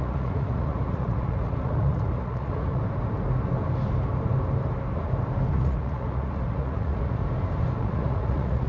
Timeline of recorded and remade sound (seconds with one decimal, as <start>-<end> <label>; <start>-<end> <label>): 0.0-2.8 remade; 2.8-5.5 recorded; 5.5-7.2 remade; 7.2-7.8 recorded; 7.8-8.7 remade